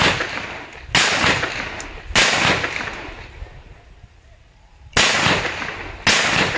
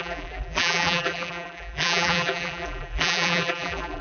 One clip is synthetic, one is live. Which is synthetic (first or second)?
second